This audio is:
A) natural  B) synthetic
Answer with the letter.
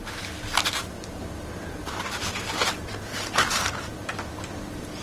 A